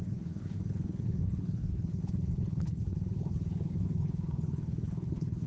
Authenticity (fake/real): fake